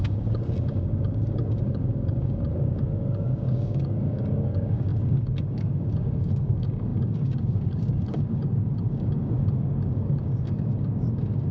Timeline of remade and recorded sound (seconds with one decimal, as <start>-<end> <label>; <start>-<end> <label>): 0.0-11.5 remade